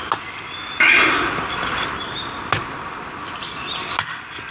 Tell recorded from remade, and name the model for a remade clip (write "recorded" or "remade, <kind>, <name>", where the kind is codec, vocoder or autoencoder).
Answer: recorded